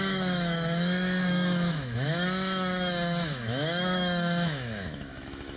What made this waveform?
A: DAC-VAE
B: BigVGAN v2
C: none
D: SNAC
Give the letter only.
A